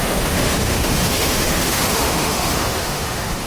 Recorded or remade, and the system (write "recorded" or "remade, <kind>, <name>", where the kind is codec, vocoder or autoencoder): remade, autoencoder, DAC-VAE